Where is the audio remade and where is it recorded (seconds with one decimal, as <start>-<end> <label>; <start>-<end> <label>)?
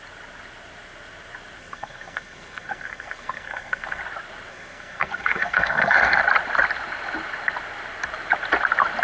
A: 0.0-1.6 recorded; 1.6-4.0 remade; 4.0-4.5 recorded; 4.5-6.2 remade; 6.2-9.0 recorded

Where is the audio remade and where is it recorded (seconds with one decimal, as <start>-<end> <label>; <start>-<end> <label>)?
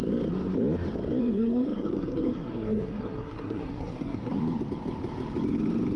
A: 0.0-1.2 recorded; 1.2-4.4 remade; 4.4-6.0 recorded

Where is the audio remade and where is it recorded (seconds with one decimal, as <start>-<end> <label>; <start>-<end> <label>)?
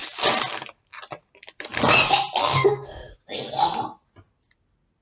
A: 0.0-2.4 recorded; 2.4-3.2 remade; 3.2-5.0 recorded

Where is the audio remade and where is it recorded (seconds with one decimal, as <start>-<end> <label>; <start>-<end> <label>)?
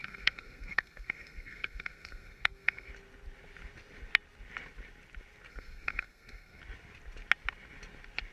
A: 0.0-2.9 remade; 2.9-5.5 recorded; 5.5-6.6 remade; 6.6-8.3 recorded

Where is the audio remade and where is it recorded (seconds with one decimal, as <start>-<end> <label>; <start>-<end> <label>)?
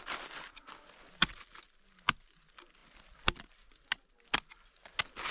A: 0.0-5.3 recorded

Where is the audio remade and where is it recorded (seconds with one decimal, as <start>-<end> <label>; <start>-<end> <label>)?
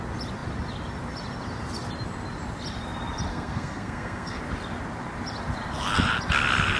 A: 0.0-3.3 recorded; 3.3-4.4 remade; 4.4-6.8 recorded